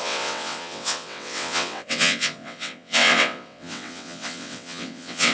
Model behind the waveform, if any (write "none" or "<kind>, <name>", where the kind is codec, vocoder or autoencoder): vocoder, WaveNeXt